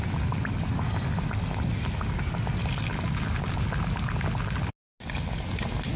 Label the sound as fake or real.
real